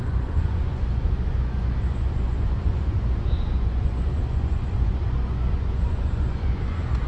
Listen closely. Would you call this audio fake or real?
fake